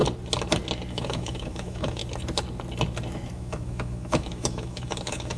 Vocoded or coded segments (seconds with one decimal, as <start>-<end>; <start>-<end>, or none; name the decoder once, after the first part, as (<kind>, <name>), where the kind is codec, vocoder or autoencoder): 0.9-2.0 (autoencoder, DAC-VAE); 3.3-5.4